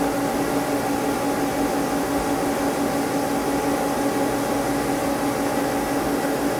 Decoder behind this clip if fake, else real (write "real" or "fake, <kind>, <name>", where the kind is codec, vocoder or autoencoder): real